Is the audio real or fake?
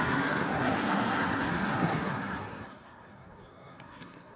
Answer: fake